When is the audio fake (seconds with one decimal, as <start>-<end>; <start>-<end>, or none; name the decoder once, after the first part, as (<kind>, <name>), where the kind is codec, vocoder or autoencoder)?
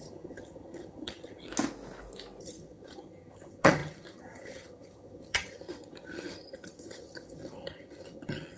0.0-1.5 (vocoder, HiFi-GAN); 2.4-8.6